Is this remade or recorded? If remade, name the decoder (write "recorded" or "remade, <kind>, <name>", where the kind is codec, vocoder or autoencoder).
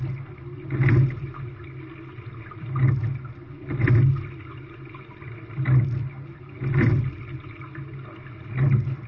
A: recorded